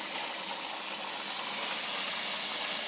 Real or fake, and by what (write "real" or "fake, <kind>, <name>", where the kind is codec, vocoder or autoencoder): real